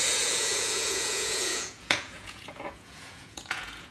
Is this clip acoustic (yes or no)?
no